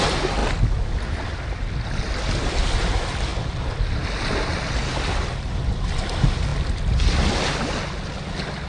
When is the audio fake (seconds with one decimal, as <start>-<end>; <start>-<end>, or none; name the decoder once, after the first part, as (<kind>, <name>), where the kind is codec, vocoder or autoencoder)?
none